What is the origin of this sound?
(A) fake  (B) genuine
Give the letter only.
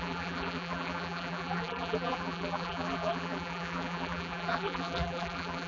A